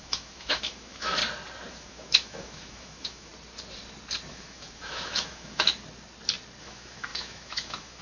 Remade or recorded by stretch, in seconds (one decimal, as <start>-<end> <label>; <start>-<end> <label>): 0.0-1.2 remade; 1.2-1.7 recorded; 1.7-3.3 remade; 3.3-4.3 recorded; 4.3-5.7 remade; 5.7-6.6 recorded; 6.6-8.0 remade